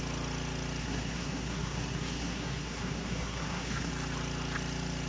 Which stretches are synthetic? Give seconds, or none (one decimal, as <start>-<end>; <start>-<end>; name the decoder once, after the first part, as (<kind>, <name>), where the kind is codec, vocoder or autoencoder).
0.8-3.9 (codec, SNAC)